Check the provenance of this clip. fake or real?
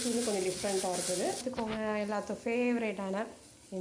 real